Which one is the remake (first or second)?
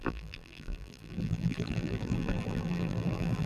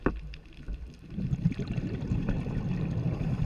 first